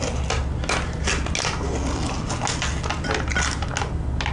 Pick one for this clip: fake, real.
real